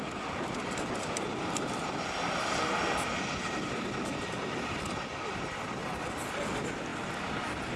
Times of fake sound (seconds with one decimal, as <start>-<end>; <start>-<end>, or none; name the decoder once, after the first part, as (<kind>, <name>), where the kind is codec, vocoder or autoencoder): 0.0-5.8 (vocoder, BigVGAN v2); 6.3-6.9